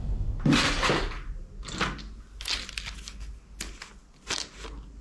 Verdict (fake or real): real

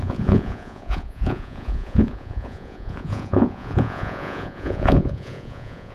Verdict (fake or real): fake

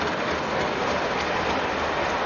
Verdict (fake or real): real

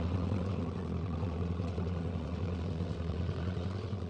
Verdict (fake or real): fake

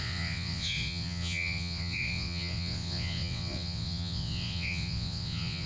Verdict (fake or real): fake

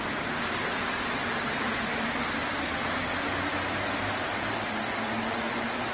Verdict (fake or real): real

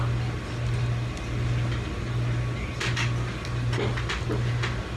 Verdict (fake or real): real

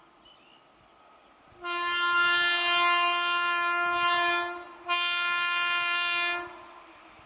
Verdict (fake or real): real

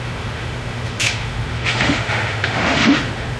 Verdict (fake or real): fake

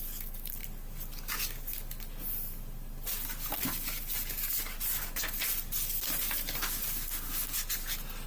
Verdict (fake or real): real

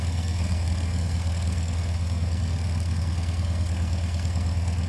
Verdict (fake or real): fake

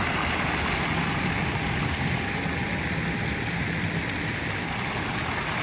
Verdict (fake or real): real